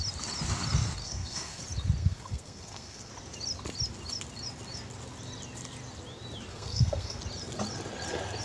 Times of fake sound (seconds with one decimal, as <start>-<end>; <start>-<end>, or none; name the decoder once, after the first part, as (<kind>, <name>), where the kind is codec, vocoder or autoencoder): 1.0-1.6 (codec, SNAC); 2.0-3.1; 6.5-7.2